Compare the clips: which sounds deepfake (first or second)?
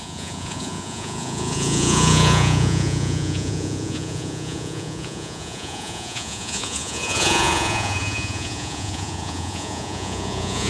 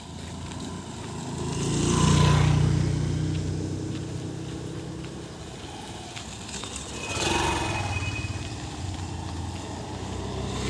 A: first